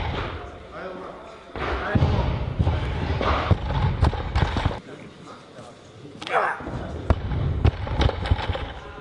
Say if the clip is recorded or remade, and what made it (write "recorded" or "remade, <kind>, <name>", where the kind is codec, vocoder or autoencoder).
recorded